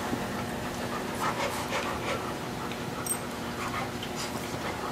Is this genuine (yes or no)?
no